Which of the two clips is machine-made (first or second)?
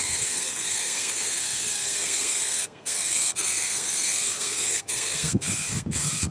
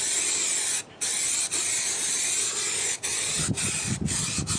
first